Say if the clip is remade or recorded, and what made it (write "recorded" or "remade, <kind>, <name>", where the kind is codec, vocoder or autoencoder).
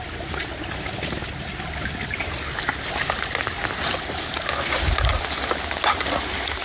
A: recorded